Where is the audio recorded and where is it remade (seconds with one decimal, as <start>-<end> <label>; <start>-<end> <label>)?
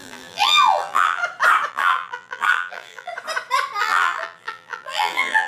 0.0-1.2 remade; 1.2-1.7 recorded; 1.7-3.1 remade; 3.1-3.8 recorded; 3.8-5.5 remade